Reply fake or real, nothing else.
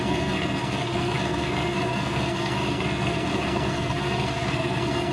fake